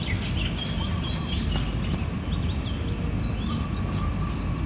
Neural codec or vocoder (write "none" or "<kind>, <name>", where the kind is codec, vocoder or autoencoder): none